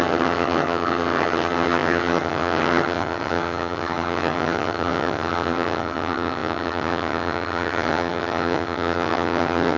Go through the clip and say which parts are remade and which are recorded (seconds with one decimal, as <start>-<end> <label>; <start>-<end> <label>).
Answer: 0.0-9.8 remade